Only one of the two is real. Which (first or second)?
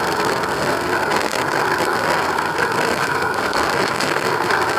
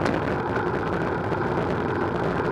second